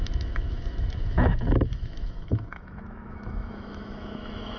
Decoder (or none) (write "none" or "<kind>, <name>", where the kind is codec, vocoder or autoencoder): autoencoder, DAC-VAE